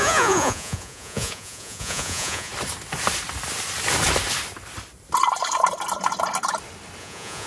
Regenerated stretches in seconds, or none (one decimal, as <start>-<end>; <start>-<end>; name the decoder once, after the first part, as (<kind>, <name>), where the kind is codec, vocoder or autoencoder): 0.0-2.5 (vocoder, Vocos); 7.0-7.5

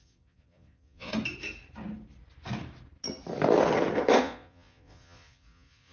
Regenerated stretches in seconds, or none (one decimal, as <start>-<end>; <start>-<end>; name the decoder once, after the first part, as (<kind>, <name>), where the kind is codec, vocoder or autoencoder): 0.0-1.1 (vocoder, Vocos); 4.2-5.9

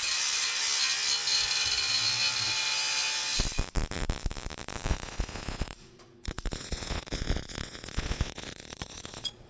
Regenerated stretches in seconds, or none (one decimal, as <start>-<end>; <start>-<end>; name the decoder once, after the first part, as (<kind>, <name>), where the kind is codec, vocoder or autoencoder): 4.9-9.5 (vocoder, Vocos)

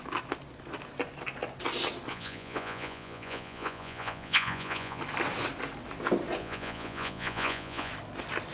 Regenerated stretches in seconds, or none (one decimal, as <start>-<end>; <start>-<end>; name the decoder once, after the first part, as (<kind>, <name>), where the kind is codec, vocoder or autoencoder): 2.1-5.0 (vocoder, Vocos); 6.4-7.9

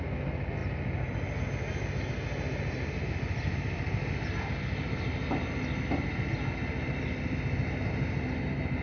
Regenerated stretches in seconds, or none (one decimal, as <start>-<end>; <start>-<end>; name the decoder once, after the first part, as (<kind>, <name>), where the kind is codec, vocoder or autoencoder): none

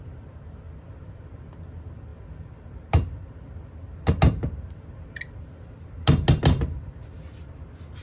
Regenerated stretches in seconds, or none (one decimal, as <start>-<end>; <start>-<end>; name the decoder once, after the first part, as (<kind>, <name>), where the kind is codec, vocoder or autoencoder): none